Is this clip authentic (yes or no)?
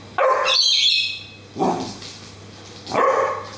yes